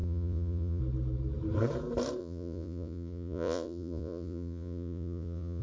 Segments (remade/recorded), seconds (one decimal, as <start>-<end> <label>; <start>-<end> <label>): 0.0-0.8 remade; 0.8-2.2 recorded; 2.2-5.6 remade